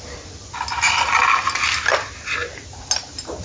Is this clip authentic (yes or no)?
yes